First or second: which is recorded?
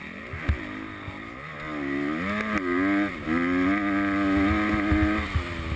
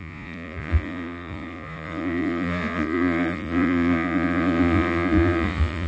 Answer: first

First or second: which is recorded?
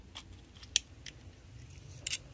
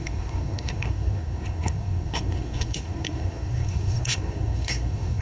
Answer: first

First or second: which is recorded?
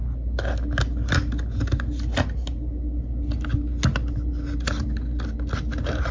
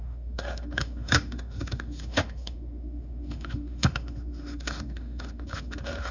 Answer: first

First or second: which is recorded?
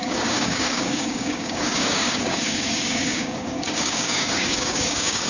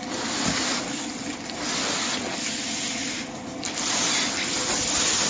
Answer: second